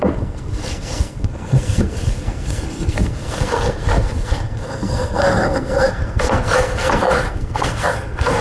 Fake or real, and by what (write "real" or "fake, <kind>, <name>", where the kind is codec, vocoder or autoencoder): fake, codec, SNAC